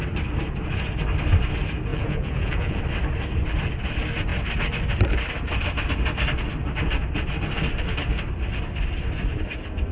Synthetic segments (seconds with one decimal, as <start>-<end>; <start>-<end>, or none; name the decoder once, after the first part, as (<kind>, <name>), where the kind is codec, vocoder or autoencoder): 1.9-2.8 (vocoder, Vocos)

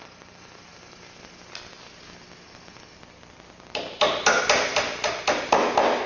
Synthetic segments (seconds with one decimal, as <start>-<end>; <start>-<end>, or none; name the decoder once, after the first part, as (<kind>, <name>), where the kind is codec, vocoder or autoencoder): none

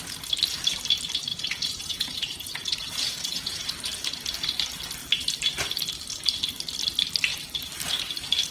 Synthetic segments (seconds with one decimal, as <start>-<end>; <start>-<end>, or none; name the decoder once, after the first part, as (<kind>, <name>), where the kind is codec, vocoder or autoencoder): 1.3-3.7 (vocoder, Vocos)

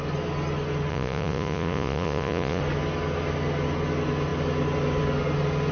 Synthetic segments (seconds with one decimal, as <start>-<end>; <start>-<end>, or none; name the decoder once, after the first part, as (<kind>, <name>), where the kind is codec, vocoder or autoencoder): 0.9-2.6 (vocoder, Vocos)